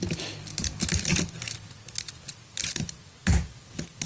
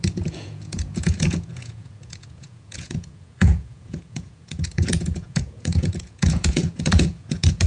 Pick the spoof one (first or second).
second